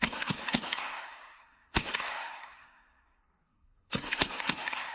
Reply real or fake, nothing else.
fake